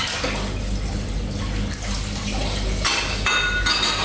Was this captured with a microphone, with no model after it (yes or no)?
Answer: yes